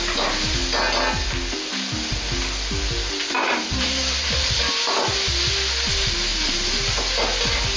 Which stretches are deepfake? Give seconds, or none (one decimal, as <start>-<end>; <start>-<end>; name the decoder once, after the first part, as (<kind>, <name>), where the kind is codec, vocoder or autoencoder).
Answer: 3.4-4.6 (vocoder, BigVGAN v2); 6.3-7.0